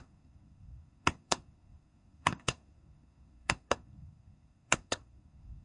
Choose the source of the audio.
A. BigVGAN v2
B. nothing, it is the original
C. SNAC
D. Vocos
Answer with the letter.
C